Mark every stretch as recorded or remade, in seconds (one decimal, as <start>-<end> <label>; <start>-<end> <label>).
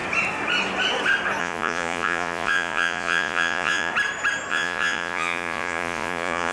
0.0-1.4 recorded; 1.4-3.9 remade; 3.9-4.5 recorded; 4.5-6.5 remade